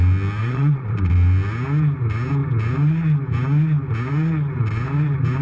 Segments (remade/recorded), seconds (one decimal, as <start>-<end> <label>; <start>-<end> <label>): 0.0-0.4 recorded; 0.4-1.1 remade; 1.1-5.4 recorded